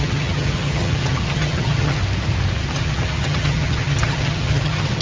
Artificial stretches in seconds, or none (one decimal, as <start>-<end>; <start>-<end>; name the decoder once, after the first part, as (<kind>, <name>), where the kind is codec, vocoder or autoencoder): 0.0-2.0 (vocoder, HiFi-GAN); 2.7-5.0